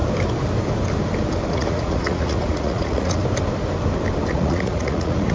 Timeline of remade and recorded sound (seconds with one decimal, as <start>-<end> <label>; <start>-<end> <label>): 0.0-1.5 recorded; 1.5-3.2 remade; 3.2-4.3 recorded; 4.3-5.3 remade